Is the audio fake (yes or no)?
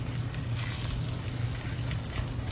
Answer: no